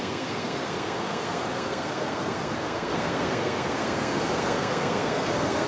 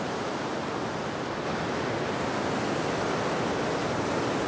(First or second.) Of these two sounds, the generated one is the first